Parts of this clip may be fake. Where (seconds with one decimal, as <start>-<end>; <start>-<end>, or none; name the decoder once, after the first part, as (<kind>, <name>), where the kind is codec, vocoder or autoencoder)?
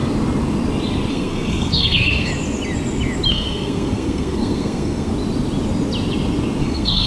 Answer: 1.1-2.3 (codec, SNAC); 3.3-5.1; 6.6-7.1